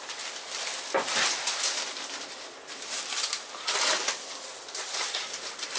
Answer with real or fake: real